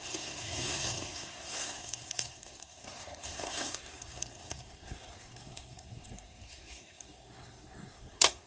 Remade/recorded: remade